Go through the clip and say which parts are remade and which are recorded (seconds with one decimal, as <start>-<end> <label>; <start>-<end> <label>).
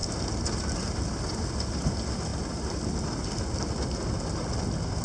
0.0-5.0 recorded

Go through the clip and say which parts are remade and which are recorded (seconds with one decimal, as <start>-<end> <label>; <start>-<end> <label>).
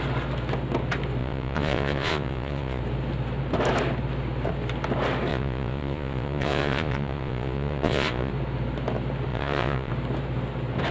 0.0-1.2 recorded; 1.2-2.8 remade; 2.8-5.3 recorded; 5.3-8.3 remade; 8.3-9.3 recorded; 9.3-9.9 remade; 9.9-10.9 recorded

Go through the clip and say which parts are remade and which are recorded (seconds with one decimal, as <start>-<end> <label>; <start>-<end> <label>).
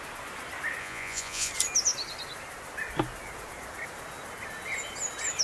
0.0-0.8 recorded; 0.8-1.5 remade; 1.5-5.4 recorded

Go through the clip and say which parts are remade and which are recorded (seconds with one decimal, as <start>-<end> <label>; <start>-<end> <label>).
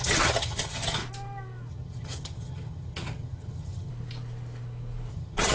0.0-1.0 remade; 1.0-1.7 recorded; 1.7-3.9 remade; 3.9-5.1 recorded; 5.1-5.5 remade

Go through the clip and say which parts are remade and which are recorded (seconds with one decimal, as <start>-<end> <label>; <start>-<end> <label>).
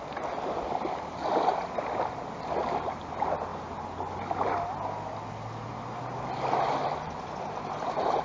0.0-8.2 recorded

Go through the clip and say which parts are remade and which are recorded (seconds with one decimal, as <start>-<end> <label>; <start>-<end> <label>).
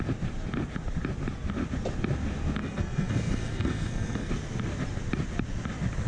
0.0-2.6 recorded; 2.6-4.3 remade; 4.3-6.1 recorded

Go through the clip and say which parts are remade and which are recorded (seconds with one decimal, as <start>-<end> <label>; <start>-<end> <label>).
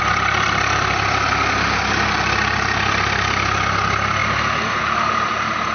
0.0-5.7 recorded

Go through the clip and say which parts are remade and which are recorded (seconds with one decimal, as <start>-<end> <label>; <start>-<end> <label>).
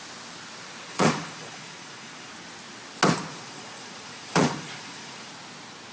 0.0-0.9 recorded; 0.9-2.3 remade; 2.3-3.3 recorded; 3.3-5.3 remade; 5.3-5.9 recorded